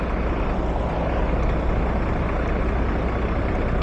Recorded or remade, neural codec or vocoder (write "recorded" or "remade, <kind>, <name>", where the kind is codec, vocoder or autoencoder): recorded